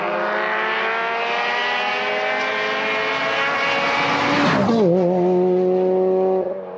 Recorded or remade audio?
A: recorded